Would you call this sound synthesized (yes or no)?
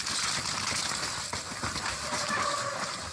no